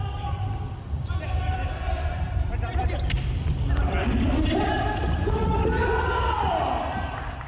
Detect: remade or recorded remade